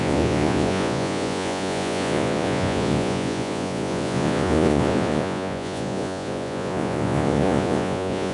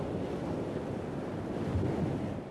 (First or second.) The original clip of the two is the second